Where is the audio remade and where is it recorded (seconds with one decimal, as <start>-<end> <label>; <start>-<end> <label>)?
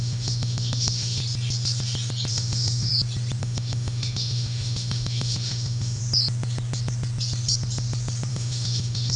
0.0-1.2 remade; 1.2-2.3 recorded; 2.3-2.9 remade; 2.9-3.4 recorded; 3.4-6.0 remade; 6.0-8.3 recorded; 8.3-9.2 remade